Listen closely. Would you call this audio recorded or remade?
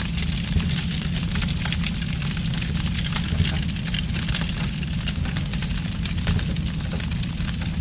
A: recorded